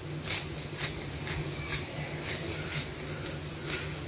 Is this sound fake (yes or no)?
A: no